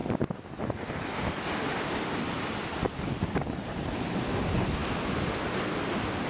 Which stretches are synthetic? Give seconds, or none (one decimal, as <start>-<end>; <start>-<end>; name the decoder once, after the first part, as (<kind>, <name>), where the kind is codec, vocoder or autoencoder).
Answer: 0.0-0.6 (vocoder, BigVGAN v2); 1.7-4.3